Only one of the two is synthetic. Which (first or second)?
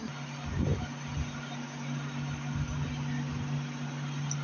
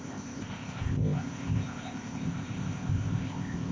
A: second